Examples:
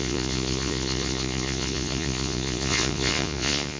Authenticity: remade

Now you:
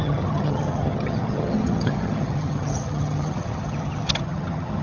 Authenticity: remade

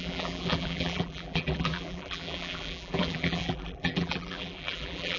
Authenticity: remade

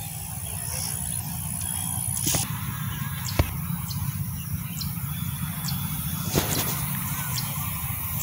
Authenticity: recorded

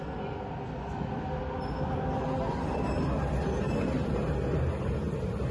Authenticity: recorded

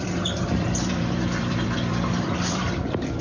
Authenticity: remade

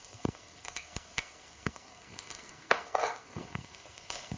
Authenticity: remade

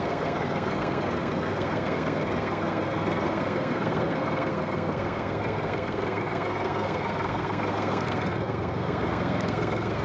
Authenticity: remade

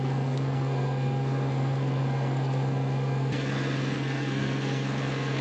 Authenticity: remade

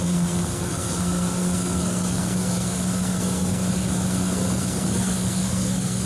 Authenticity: remade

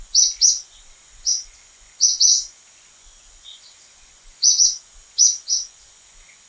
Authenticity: remade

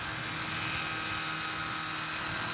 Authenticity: recorded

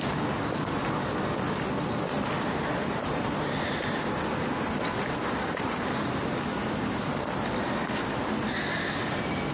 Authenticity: recorded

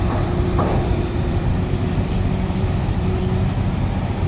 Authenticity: remade